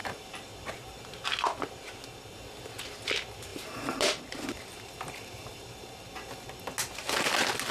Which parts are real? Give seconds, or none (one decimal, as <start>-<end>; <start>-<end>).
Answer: 0.7-3.5; 6.0-7.7